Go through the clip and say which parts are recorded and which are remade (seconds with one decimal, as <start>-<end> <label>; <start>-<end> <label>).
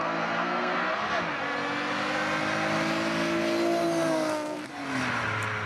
0.0-0.8 remade; 0.8-4.1 recorded; 4.1-4.7 remade; 4.7-5.7 recorded